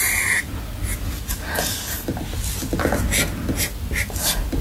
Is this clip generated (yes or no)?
no